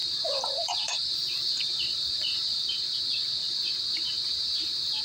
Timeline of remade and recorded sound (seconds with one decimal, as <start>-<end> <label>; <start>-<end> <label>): 0.0-3.0 remade; 3.0-3.4 recorded; 3.4-5.0 remade